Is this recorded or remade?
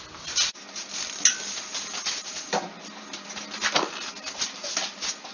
recorded